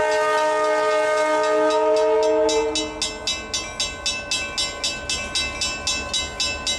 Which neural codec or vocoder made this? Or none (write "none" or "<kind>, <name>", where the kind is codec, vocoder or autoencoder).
none